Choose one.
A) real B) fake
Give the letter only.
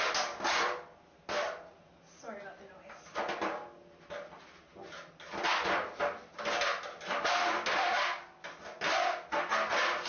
A